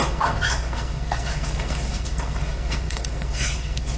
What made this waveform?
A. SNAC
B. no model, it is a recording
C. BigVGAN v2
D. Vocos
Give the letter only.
A